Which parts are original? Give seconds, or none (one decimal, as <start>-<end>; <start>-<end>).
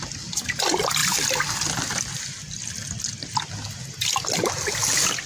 0.0-5.3